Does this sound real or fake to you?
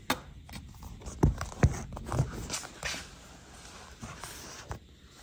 real